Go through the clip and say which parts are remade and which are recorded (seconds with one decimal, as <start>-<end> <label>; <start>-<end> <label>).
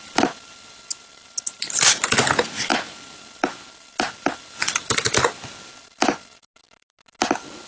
0.0-7.7 recorded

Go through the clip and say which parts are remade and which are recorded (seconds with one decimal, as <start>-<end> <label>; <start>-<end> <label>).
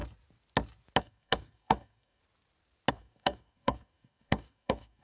0.0-1.0 recorded; 1.0-2.2 remade; 2.2-2.9 recorded; 2.9-5.0 remade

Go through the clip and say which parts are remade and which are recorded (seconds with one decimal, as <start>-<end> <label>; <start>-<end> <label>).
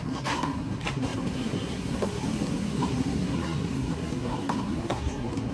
0.0-5.5 remade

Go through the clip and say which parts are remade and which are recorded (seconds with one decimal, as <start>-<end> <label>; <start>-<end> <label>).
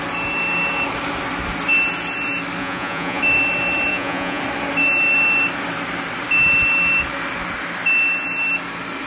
0.0-2.6 recorded; 2.6-3.2 remade; 3.2-3.9 recorded; 3.9-4.4 remade; 4.4-9.1 recorded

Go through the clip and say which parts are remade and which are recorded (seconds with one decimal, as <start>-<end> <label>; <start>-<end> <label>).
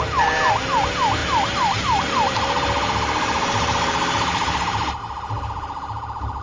0.0-6.4 recorded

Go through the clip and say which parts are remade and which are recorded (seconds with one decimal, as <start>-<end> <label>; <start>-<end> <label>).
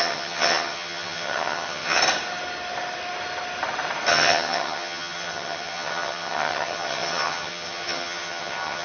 0.0-2.0 remade; 2.0-4.1 recorded; 4.1-8.8 remade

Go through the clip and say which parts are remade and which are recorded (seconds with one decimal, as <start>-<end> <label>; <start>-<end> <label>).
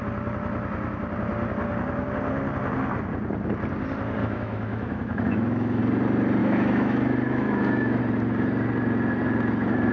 0.0-4.2 recorded; 4.2-5.8 remade; 5.8-6.4 recorded; 6.4-8.0 remade; 8.0-9.9 recorded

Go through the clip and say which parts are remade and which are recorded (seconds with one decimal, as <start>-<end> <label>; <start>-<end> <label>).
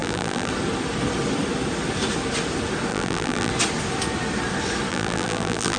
0.0-0.5 remade; 0.5-2.9 recorded; 2.9-3.5 remade; 3.5-4.9 recorded; 4.9-5.8 remade